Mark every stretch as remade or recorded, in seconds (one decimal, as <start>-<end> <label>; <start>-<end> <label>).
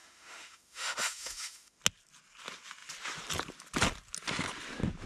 0.0-1.8 remade; 1.8-5.1 recorded